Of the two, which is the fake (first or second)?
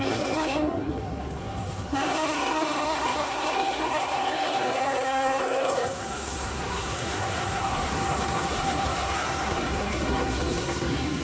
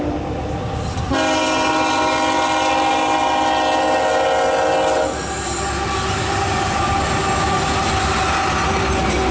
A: first